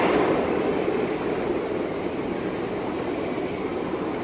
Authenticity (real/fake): real